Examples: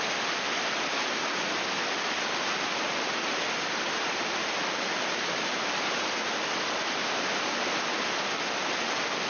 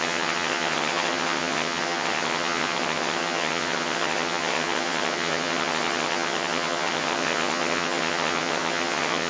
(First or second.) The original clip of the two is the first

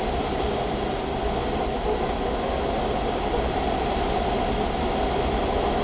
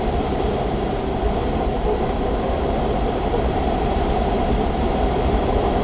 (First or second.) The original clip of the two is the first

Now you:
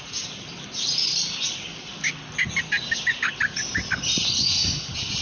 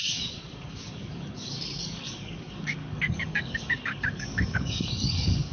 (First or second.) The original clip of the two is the first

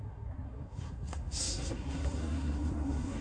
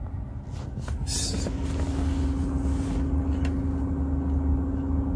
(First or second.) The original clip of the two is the second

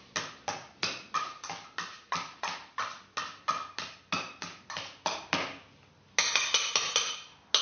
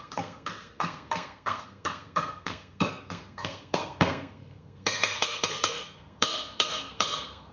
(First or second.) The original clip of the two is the first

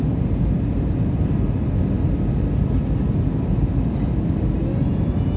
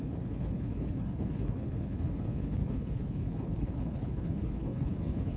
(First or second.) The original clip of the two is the first